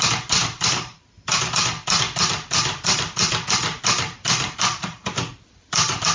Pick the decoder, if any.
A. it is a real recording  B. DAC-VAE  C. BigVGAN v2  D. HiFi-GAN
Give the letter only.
C